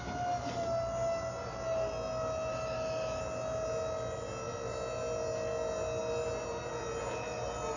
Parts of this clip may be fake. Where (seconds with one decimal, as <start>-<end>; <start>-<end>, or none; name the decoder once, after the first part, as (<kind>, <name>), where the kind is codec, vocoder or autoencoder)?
2.5-3.2 (autoencoder, DAC-VAE)